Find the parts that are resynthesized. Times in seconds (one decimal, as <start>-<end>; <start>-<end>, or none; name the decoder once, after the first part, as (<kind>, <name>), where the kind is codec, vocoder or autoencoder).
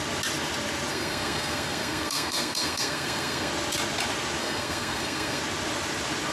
0.9-3.5 (codec, SNAC); 4.4-5.4